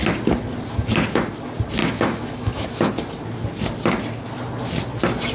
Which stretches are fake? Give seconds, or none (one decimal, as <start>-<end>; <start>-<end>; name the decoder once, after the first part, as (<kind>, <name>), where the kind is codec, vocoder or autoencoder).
1.8-2.9 (autoencoder, DAC-VAE)